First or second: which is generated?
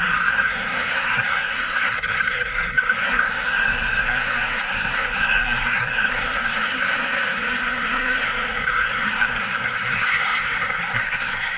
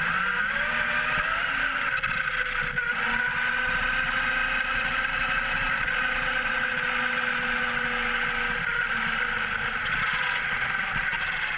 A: first